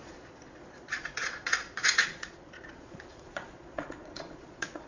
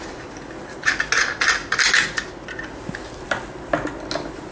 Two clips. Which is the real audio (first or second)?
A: second